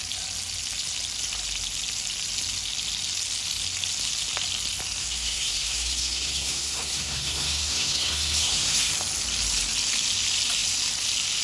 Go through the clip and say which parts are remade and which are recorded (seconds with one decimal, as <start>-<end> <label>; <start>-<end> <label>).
0.0-5.0 recorded; 5.0-8.9 remade; 8.9-11.4 recorded